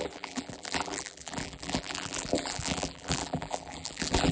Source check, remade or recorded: remade